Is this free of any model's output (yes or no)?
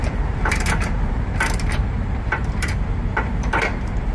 no